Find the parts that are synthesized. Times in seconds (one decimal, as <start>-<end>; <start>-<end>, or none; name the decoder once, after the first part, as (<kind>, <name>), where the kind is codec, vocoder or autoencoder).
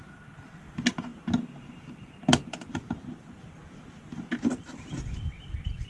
none